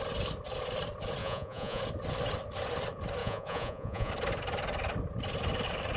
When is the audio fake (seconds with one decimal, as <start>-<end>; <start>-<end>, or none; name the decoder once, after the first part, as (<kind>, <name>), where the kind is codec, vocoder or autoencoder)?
1.2-1.8 (vocoder, Vocos); 3.2-4.1